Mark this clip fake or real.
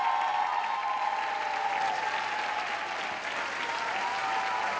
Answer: real